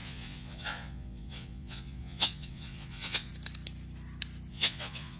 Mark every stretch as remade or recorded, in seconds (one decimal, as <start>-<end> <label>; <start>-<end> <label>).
0.0-3.3 remade; 3.3-4.5 recorded; 4.5-5.2 remade